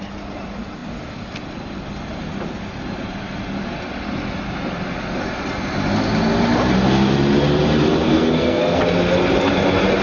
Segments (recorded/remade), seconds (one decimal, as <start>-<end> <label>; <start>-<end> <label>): 0.0-8.1 recorded; 8.1-8.8 remade; 8.8-10.0 recorded